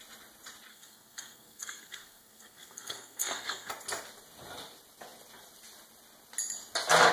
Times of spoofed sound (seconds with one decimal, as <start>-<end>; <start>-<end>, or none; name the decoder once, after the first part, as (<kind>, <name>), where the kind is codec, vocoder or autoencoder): 0.7-3.7 (codec, SNAC)